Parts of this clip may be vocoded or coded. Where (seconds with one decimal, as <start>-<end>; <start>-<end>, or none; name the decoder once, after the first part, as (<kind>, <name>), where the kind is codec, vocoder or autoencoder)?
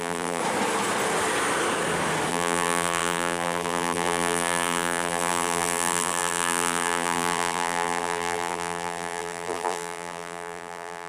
0.0-0.4 (vocoder, BigVGAN v2); 2.3-11.1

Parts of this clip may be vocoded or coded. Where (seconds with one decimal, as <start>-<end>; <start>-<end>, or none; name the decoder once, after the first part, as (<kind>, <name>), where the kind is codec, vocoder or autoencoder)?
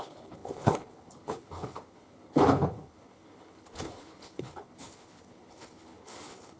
0.0-6.6 (codec, HILCodec)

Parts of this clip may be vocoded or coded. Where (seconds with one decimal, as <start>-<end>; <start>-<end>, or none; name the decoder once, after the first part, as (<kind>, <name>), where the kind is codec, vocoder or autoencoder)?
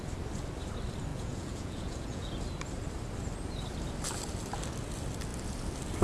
1.1-2.4 (vocoder, Vocos)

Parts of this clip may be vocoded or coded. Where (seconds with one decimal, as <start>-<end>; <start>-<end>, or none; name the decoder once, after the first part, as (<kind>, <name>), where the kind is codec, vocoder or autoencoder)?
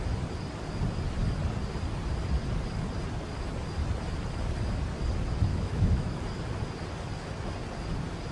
5.5-6.2 (autoencoder, DAC-VAE)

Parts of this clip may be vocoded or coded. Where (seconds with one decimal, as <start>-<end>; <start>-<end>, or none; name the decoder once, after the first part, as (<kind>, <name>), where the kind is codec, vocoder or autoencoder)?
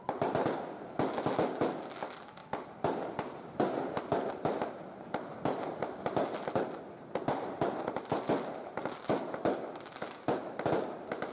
none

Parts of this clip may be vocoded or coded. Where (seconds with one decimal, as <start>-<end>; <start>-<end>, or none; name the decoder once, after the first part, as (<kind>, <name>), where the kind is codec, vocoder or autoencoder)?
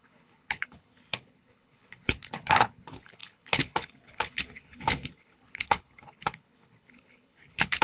0.0-7.8 (codec, HILCodec)